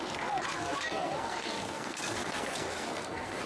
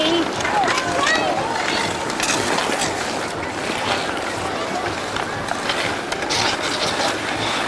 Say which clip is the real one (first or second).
second